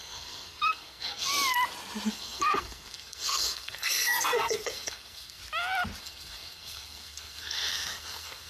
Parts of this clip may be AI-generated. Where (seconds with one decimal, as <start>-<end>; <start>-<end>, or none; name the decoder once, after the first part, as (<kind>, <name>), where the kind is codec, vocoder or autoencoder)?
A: 0.0-1.3 (codec, SNAC); 2.1-5.4; 6.0-8.5

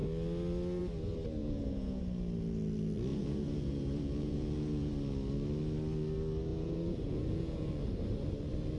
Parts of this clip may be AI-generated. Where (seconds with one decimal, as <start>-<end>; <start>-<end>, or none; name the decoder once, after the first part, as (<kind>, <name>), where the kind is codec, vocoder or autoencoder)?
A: 1.4-2.0 (vocoder, Vocos); 3.1-4.9; 6.5-7.7

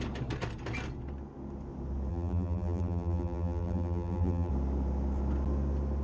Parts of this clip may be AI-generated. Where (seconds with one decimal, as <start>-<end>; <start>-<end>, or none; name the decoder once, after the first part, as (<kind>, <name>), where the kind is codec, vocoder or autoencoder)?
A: 2.1-4.5 (vocoder, BigVGAN v2)

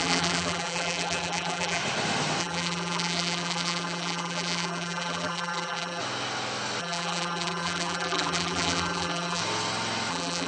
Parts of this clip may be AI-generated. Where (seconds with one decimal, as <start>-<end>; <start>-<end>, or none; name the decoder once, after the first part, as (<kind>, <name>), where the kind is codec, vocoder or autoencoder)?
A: 0.0-1.8 (vocoder, BigVGAN v2); 2.4-6.0; 6.8-9.4; 10.1-10.5